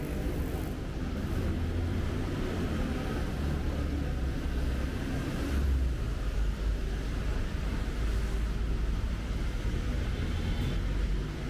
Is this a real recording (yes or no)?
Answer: yes